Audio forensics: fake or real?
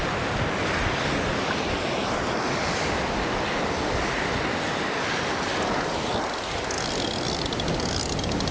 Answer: real